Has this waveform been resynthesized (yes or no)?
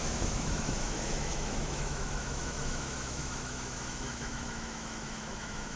yes